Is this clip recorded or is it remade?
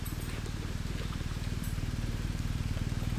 remade